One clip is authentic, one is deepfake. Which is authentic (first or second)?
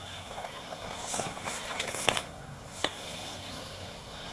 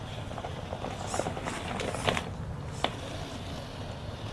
second